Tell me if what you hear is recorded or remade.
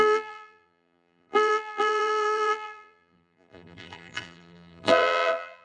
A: remade